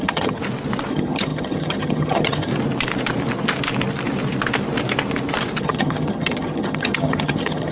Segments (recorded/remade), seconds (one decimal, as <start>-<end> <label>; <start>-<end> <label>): 0.0-0.4 remade; 0.4-0.9 recorded; 0.9-2.5 remade; 2.5-5.6 recorded; 5.6-7.7 remade